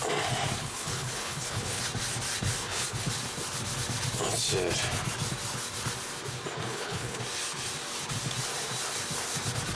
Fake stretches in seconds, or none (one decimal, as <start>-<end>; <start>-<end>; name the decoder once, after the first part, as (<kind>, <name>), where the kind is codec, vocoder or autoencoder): 0.6-1.8 (codec, HILCodec); 2.6-3.1; 6.7-7.2